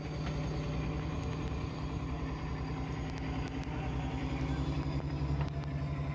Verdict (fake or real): real